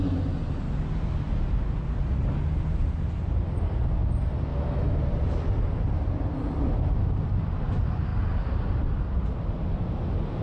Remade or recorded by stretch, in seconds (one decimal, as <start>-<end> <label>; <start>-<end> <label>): 0.0-4.5 recorded; 4.5-5.0 remade; 5.0-10.4 recorded